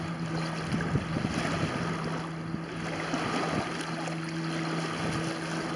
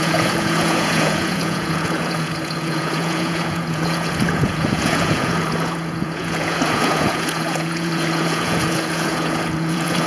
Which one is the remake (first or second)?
second